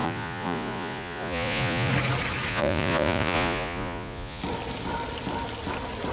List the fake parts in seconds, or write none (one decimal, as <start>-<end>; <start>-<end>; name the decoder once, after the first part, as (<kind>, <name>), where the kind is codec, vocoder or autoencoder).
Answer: 0.0-1.9 (vocoder, Vocos); 2.5-4.4

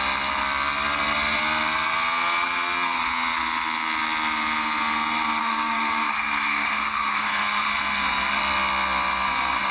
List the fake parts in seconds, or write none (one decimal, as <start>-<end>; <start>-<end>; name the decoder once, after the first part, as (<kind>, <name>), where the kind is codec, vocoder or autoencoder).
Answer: 5.4-7.8 (codec, SNAC)

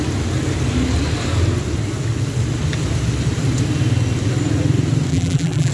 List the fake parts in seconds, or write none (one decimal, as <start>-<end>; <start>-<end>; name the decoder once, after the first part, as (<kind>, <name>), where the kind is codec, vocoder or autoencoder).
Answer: 5.1-5.7 (vocoder, BigVGAN v2)

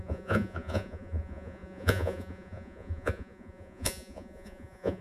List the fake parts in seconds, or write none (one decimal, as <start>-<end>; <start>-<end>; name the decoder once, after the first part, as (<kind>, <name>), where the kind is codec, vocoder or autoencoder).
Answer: 0.0-5.0 (vocoder, Vocos)

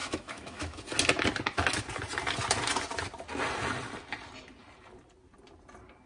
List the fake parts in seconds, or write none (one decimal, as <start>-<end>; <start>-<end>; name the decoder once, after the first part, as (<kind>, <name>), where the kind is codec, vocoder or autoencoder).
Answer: 0.0-0.8 (autoencoder, DAC-VAE)